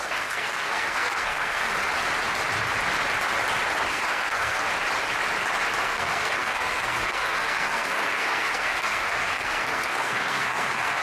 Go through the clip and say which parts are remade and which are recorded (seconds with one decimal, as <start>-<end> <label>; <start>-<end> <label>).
0.0-1.7 remade; 1.7-3.9 recorded; 3.9-4.7 remade; 4.7-5.8 recorded; 5.8-11.0 remade